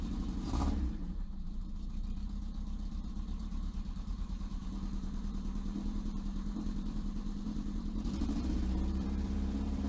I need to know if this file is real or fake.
fake